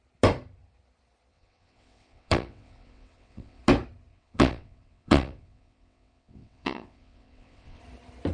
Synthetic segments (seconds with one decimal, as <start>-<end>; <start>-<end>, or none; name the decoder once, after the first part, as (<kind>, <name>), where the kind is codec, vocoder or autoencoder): 1.3-3.6 (vocoder, WaveNeXt); 4.1-7.8